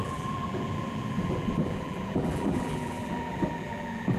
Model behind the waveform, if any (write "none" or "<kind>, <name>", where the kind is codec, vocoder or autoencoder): vocoder, BigVGAN v2